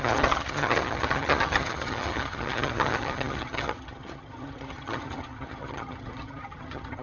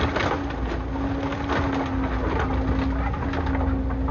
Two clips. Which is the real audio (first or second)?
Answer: second